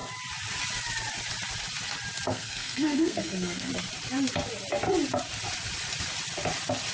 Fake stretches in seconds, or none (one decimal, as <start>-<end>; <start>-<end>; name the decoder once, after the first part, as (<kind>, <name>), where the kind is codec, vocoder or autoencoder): 2.3-3.7 (codec, SNAC)